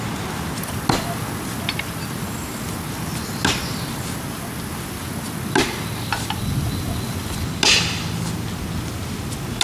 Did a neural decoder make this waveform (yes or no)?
no